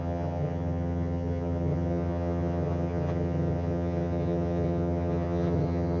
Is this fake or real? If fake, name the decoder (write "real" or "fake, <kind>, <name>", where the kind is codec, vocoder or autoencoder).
fake, vocoder, HiFi-GAN